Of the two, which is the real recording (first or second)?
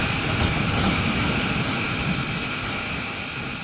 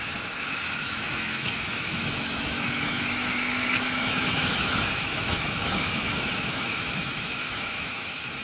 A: first